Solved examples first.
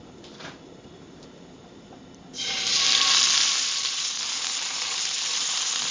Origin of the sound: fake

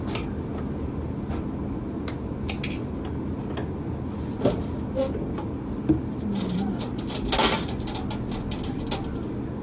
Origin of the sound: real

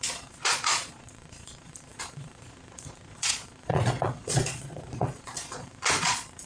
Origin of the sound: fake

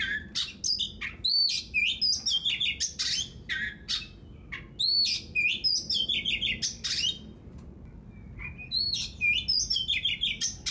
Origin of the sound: real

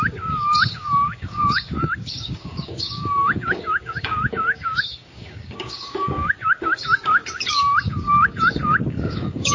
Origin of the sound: fake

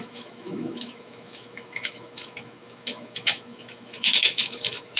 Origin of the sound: fake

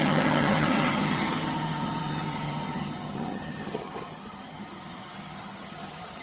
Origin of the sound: fake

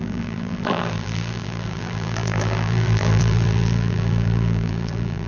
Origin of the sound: fake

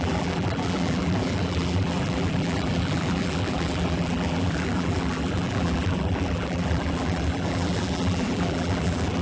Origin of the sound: fake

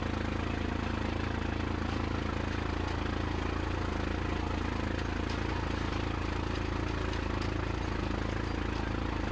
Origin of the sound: real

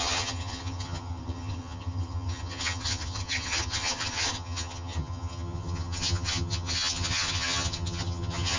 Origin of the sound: fake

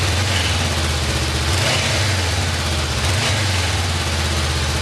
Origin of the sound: real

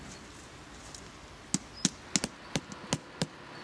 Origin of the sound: real